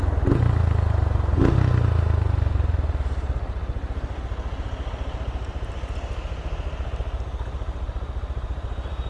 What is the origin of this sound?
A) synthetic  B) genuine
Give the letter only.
B